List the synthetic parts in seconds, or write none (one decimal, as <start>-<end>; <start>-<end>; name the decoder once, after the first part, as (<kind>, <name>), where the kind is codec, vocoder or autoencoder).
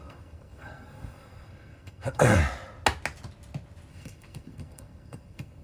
0.0-2.4 (codec, SNAC); 3.9-5.6